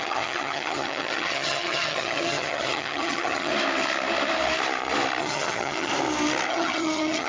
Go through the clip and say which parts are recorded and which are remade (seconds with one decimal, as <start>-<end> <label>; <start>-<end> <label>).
0.0-3.5 remade; 3.5-5.2 recorded; 5.2-5.9 remade; 5.9-6.5 recorded; 6.5-7.3 remade